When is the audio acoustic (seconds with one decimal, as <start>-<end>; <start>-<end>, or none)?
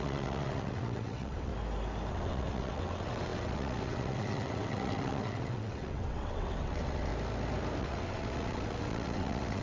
1.5-2.1; 7.1-7.8